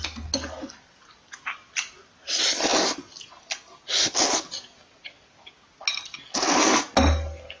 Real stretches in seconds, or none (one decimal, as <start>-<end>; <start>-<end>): 0.0-7.6